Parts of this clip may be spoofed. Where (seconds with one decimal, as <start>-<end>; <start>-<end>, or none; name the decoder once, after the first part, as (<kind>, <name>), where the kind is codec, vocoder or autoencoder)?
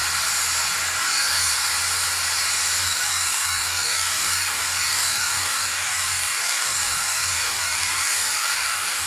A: 1.0-1.5 (codec, DAC); 2.8-9.1